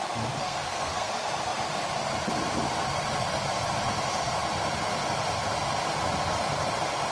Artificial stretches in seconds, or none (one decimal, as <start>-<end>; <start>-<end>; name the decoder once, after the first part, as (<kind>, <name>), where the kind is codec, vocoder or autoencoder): 0.4-1.1 (codec, SNAC)